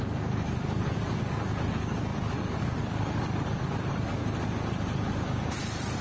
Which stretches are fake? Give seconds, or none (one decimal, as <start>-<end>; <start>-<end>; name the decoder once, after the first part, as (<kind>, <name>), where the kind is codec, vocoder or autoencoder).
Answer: 0.0-4.2 (codec, DAC)